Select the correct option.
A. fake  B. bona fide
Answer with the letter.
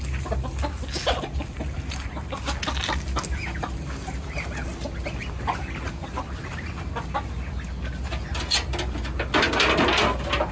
B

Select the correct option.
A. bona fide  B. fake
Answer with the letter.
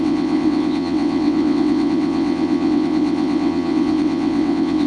B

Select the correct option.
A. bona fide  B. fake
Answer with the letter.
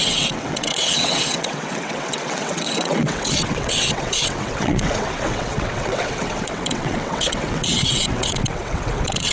B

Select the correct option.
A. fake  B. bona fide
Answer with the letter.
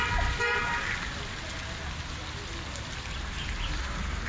B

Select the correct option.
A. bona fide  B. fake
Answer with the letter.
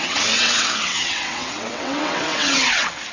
B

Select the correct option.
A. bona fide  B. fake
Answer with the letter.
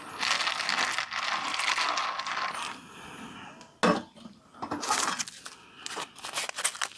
A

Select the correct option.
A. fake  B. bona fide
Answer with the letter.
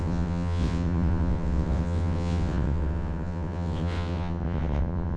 A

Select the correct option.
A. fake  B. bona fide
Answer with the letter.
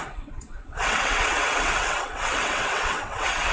A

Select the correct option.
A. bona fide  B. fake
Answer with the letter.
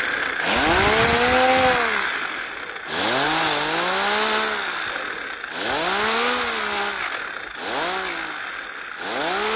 A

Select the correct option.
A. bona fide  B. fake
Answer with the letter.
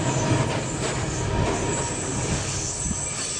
A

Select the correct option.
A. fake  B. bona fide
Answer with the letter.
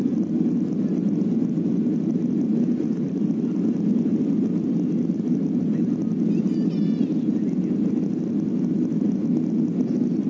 B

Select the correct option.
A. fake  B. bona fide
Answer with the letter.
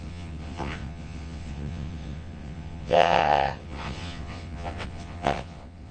A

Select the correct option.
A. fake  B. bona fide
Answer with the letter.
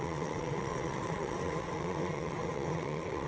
A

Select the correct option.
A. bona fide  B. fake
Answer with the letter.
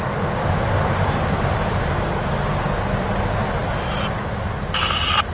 A